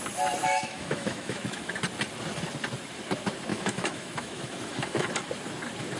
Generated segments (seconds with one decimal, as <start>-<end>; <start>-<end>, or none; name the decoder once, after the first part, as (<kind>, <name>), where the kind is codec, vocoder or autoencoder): 0.4-1.7 (autoencoder, DAC-VAE); 3.5-5.1